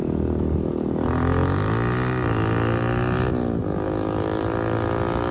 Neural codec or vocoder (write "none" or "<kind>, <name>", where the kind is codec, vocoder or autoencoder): none